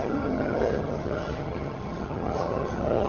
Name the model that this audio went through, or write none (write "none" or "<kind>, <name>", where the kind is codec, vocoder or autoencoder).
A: vocoder, HiFi-GAN